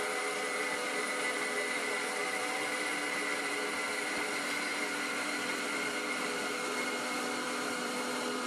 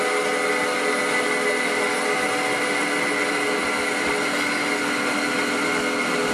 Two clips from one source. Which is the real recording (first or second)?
second